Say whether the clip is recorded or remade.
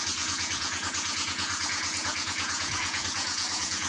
remade